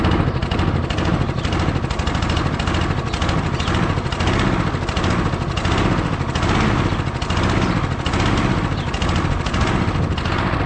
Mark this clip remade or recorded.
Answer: recorded